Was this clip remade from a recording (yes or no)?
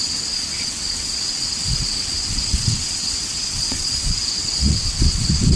yes